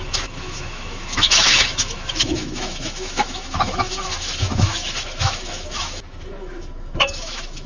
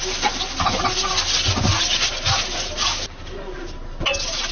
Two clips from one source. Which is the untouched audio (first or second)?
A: second